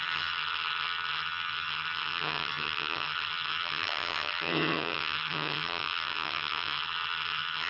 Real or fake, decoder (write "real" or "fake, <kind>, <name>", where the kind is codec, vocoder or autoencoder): fake, vocoder, HiFi-GAN